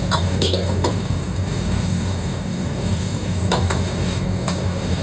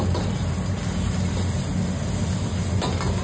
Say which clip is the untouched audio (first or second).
second